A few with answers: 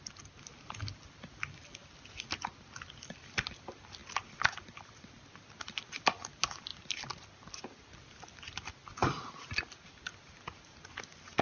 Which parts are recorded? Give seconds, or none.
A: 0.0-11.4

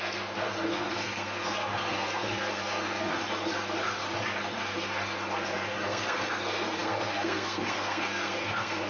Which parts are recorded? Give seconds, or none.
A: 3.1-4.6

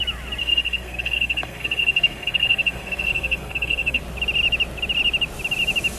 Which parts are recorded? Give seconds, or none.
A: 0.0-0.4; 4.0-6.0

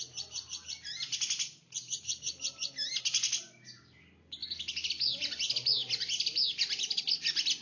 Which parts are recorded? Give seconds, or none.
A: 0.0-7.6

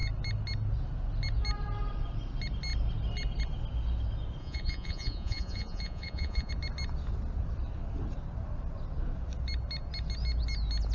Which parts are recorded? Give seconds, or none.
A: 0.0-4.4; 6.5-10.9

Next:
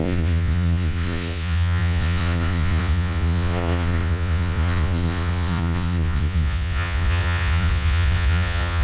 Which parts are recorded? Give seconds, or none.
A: none